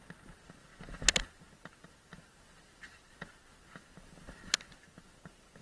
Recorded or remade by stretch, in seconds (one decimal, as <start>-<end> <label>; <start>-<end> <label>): 0.0-5.6 recorded